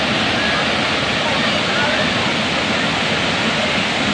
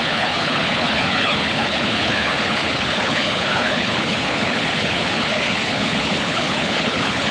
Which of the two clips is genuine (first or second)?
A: first